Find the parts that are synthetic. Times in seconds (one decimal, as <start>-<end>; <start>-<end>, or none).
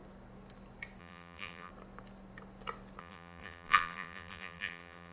1.0-1.7; 3.0-5.1